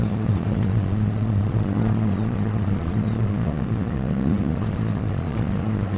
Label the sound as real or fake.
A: fake